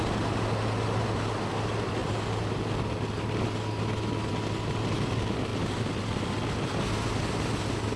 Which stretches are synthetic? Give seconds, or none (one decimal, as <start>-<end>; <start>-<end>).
none